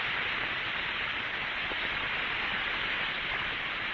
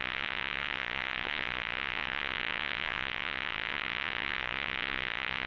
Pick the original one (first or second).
first